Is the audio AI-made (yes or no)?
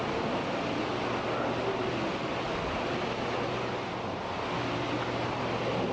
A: no